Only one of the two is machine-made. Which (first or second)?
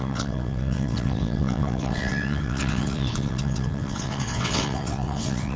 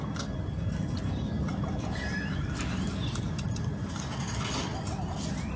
first